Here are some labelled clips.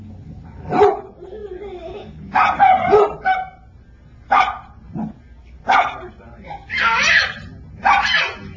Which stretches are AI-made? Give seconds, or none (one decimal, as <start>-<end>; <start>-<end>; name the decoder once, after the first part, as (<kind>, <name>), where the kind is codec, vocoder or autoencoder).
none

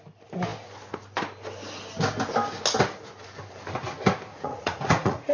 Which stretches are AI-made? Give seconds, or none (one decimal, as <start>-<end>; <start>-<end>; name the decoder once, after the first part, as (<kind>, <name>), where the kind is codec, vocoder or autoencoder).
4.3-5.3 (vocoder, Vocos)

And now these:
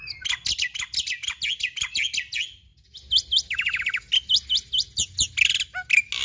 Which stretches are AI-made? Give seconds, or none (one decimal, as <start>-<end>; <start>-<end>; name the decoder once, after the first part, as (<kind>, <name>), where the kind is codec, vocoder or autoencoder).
none

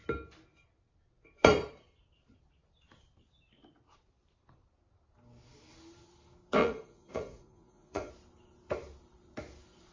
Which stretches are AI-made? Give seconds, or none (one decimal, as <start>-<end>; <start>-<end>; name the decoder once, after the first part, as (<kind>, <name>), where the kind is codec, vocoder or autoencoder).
6.6-8.1 (vocoder, Vocos)

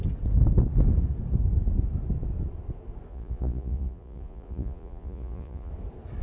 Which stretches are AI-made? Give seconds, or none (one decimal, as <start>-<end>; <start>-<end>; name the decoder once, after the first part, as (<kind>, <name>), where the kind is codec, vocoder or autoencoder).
3.1-5.7 (vocoder, Vocos)